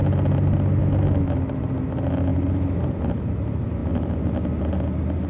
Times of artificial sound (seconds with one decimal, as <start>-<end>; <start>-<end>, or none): 0.8-1.4